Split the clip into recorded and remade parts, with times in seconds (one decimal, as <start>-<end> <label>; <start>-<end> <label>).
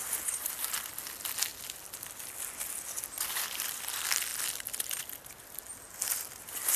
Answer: 0.0-6.8 recorded